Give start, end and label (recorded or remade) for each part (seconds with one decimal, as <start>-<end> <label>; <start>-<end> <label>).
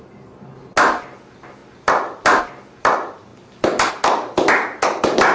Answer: 0.0-5.3 recorded